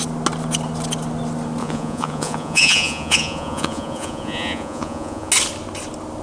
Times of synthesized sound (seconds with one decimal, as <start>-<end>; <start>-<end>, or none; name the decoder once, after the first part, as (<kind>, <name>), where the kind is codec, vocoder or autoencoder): 1.6-5.3 (vocoder, Vocos)

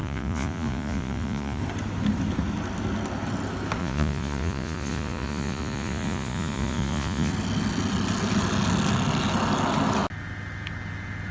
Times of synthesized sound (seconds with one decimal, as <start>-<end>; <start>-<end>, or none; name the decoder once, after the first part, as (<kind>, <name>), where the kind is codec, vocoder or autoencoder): 0.0-1.6 (vocoder, Vocos); 3.8-7.3

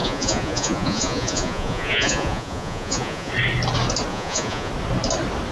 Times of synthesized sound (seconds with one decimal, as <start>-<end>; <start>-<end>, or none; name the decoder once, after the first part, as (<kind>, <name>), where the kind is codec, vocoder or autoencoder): 0.0-3.3 (vocoder, Vocos); 4.1-4.7

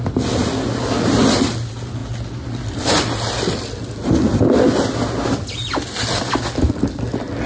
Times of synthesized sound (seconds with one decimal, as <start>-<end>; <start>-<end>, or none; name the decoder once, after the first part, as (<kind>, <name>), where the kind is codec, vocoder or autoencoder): none

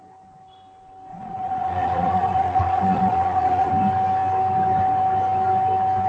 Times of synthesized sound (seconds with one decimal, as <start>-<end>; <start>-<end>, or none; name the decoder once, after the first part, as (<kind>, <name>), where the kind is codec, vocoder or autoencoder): 1.1-3.7 (vocoder, Vocos)

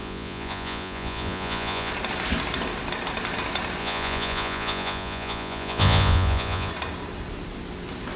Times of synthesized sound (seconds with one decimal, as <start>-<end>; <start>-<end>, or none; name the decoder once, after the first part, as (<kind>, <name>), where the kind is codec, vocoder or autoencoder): 0.0-1.9 (vocoder, Vocos); 3.8-6.7

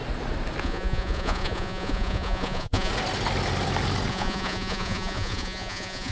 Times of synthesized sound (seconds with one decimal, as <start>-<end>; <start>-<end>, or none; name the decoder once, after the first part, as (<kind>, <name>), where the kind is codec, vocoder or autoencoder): 0.6-2.9 (vocoder, Vocos); 4.1-6.1

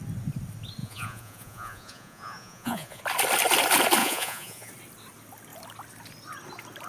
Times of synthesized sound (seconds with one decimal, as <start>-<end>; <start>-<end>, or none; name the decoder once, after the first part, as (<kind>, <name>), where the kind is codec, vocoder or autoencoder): 0.8-3.0 (vocoder, Vocos); 4.0-4.7